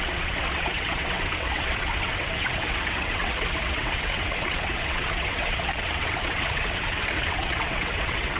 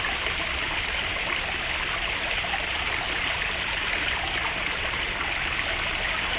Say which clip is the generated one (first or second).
first